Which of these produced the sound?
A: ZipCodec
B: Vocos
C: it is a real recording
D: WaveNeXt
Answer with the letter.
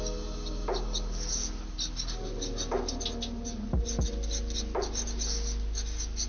C